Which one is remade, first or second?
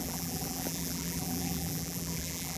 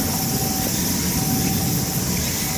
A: first